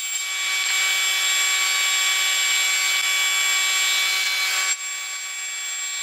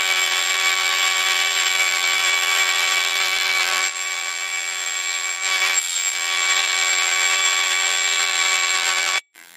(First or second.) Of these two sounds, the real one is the first